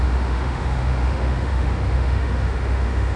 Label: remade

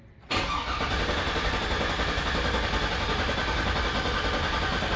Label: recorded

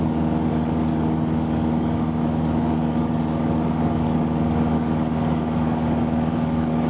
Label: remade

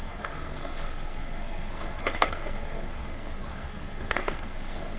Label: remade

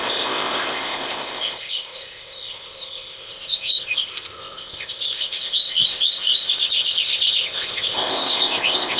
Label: remade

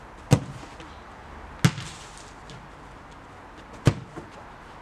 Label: recorded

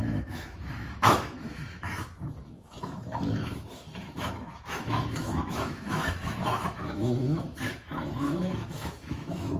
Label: remade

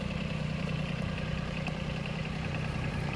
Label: remade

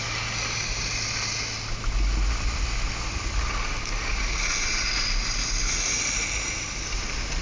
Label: recorded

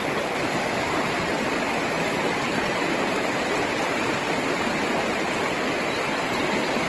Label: recorded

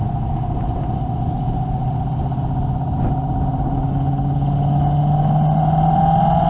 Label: recorded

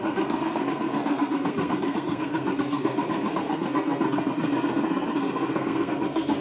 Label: remade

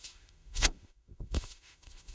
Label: remade